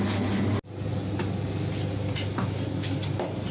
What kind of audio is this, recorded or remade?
recorded